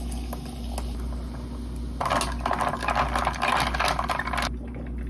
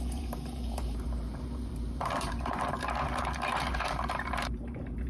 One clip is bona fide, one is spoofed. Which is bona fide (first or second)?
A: first